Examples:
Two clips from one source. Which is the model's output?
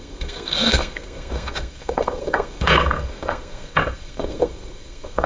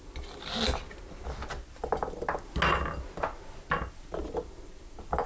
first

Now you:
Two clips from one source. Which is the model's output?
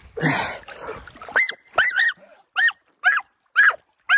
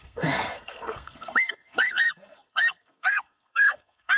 second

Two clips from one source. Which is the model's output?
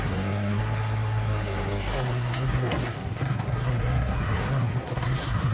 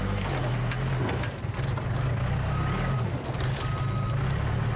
first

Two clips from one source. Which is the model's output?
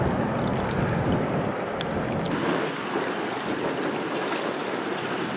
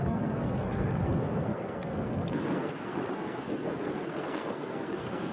second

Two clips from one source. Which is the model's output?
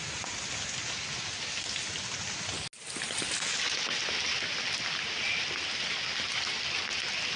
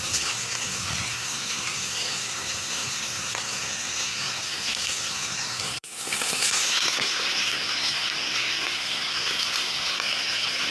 second